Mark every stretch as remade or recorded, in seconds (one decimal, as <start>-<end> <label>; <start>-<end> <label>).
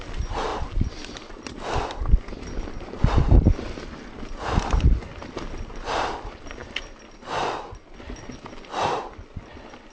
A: 0.0-9.9 recorded